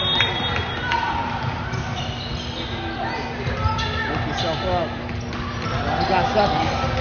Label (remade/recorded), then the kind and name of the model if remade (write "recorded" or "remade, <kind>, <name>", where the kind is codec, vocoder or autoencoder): recorded